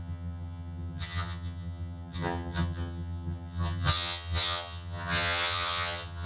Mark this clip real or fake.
fake